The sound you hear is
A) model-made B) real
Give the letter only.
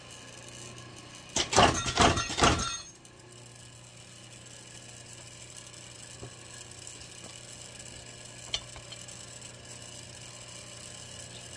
B